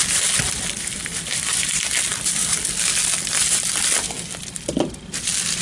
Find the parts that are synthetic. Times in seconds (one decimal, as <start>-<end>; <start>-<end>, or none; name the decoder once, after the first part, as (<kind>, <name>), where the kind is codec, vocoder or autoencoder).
none